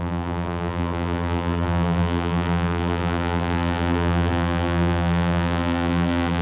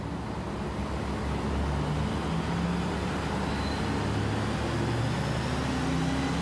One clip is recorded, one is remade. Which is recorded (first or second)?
second